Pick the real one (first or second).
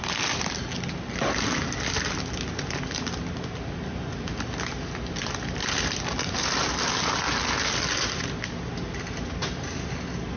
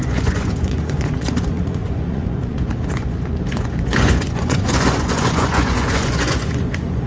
first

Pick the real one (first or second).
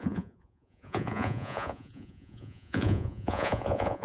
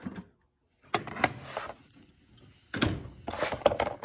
second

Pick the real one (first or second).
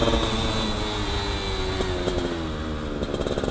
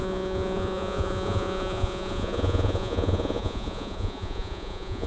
first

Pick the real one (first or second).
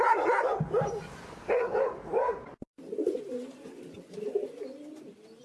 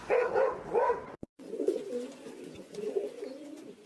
first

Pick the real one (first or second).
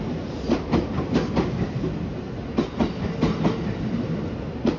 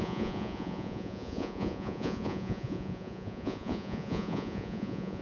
first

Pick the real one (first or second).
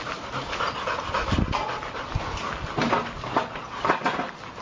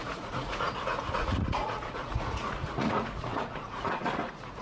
first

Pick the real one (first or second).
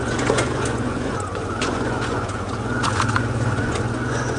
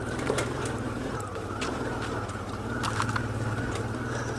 second